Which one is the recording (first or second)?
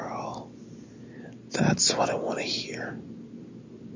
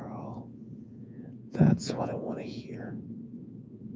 first